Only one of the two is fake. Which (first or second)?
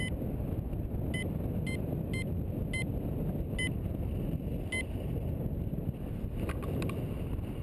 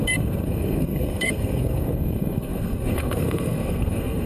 second